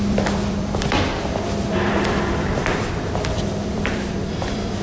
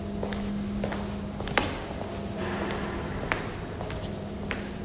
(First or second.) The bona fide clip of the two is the second